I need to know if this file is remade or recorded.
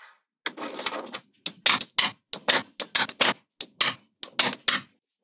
recorded